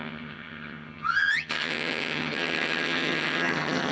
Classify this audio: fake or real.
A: fake